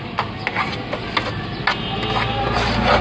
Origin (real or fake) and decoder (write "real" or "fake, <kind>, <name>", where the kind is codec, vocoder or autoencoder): real